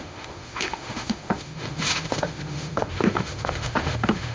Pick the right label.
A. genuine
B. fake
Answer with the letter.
B